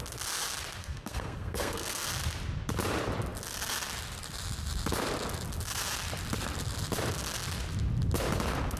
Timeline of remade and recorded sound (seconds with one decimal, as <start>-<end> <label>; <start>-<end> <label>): 0.0-0.8 recorded; 0.8-2.1 remade; 2.1-8.8 recorded